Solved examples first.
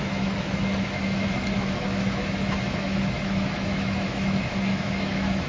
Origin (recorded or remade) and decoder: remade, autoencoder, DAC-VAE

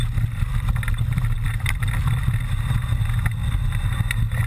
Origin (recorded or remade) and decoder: recorded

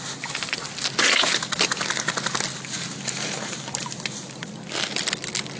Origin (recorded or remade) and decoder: recorded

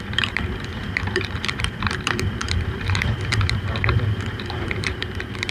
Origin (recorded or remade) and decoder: remade, vocoder, BigVGAN v2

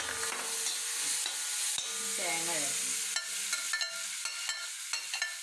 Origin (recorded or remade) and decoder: recorded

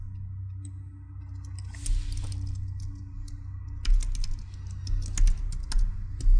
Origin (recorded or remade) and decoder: recorded